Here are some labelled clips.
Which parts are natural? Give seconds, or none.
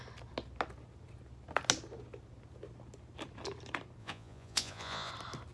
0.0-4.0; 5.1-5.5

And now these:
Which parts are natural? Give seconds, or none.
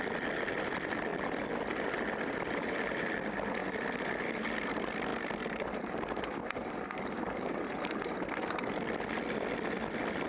3.6-4.2; 5.1-10.3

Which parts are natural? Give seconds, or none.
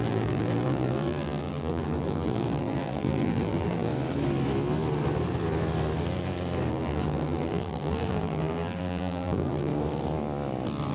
3.9-6.7; 9.7-10.9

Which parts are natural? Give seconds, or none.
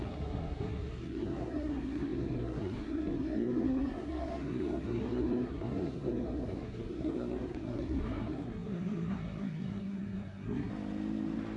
10.7-11.6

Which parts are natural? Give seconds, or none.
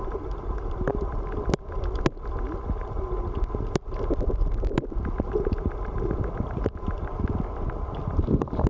0.0-8.7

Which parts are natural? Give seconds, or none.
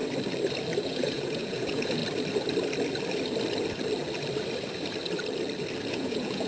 0.0-0.8; 2.0-5.9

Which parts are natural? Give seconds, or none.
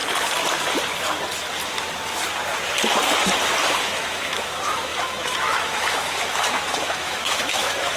0.0-3.8